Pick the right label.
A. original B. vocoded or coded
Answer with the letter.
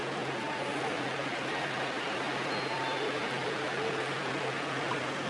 B